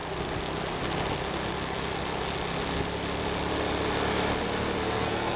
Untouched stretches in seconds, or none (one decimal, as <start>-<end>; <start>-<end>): 0.0-4.8

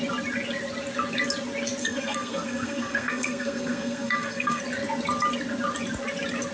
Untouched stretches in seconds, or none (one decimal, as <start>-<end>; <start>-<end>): 0.0-1.8; 4.6-6.5

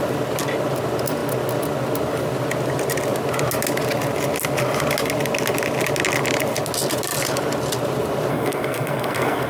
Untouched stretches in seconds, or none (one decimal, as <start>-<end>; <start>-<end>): 0.0-8.3

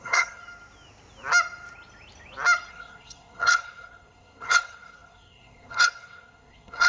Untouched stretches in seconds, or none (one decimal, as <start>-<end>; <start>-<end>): 0.4-2.7

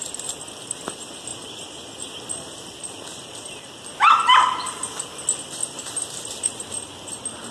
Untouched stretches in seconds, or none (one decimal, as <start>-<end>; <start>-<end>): 0.0-7.5

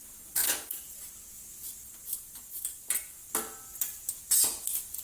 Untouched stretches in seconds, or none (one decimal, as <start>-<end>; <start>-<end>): 0.0-5.0

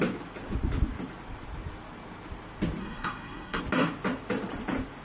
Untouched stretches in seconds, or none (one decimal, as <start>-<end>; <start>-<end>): 0.0-2.8; 3.6-5.0